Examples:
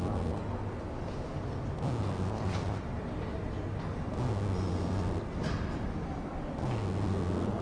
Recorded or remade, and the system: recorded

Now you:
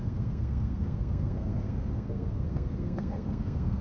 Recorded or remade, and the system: remade, codec, SNAC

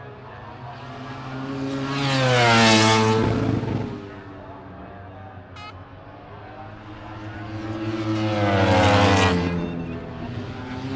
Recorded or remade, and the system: recorded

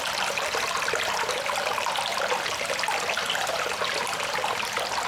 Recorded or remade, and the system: recorded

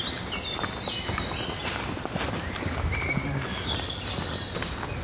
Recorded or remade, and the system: recorded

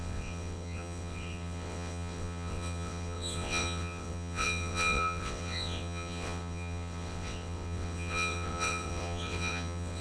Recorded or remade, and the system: remade, vocoder, WaveNeXt